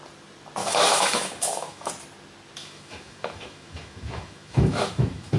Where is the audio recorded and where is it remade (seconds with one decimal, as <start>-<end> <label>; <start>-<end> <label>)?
0.0-0.6 recorded; 0.6-1.9 remade; 1.9-2.6 recorded; 2.6-5.4 remade